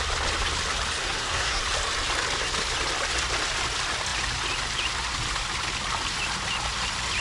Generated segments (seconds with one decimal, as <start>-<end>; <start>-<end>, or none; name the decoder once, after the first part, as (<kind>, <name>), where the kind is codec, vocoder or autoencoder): 1.0-1.6 (codec, SNAC)